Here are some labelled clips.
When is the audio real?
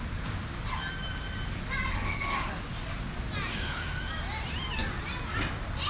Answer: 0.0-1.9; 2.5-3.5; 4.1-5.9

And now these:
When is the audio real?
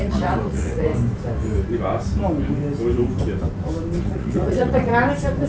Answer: 0.9-4.0; 4.9-5.5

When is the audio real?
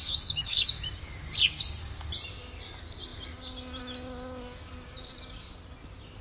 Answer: 0.7-6.2